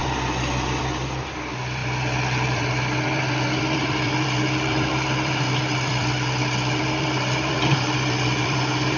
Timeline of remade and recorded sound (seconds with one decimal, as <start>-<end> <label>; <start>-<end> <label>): 0.0-0.8 recorded; 0.8-9.0 remade